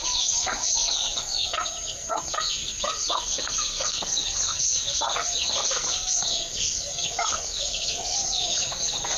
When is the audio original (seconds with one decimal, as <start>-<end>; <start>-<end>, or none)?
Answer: none